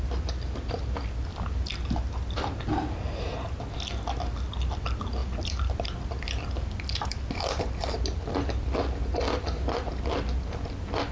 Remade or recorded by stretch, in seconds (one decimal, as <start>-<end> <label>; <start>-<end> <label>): 0.0-5.2 recorded; 5.2-7.2 remade; 7.2-11.1 recorded